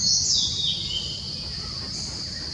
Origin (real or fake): real